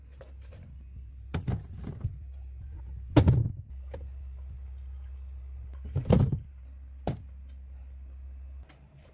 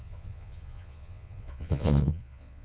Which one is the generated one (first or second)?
second